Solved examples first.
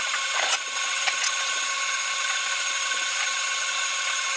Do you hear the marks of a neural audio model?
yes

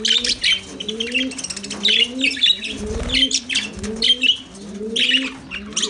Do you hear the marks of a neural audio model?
no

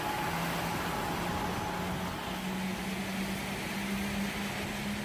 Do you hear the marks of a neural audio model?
no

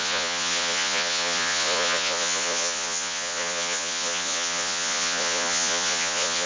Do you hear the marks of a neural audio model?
yes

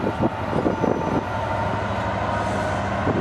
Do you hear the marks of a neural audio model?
no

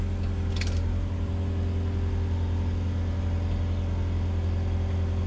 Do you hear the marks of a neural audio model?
no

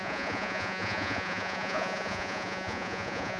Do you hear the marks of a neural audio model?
yes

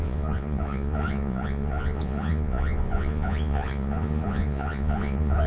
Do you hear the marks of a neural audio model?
yes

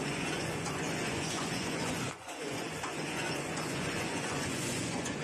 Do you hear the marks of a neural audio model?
yes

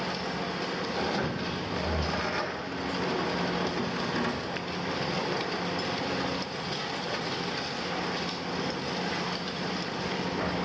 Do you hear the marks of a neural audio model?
no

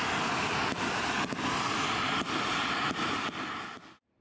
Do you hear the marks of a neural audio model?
no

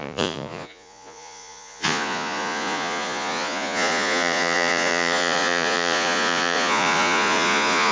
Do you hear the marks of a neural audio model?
yes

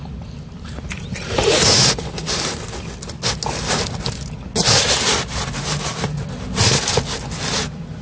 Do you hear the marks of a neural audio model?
no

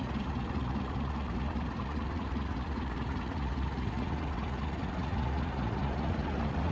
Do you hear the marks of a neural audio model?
yes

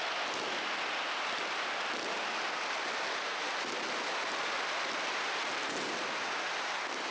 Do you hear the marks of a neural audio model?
no